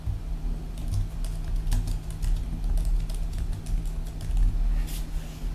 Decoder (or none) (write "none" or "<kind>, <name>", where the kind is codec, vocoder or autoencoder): none